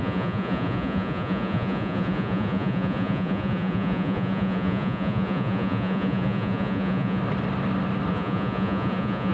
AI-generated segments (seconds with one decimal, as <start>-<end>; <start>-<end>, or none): 0.0-7.2; 8.1-9.3